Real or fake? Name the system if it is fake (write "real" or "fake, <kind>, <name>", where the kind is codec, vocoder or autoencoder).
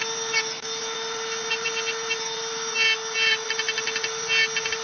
real